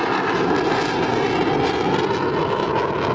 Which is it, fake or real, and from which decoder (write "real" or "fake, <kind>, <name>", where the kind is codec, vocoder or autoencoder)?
real